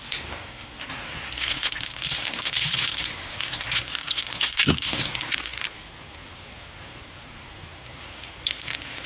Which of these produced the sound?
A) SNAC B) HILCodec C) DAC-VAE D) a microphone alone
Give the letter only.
A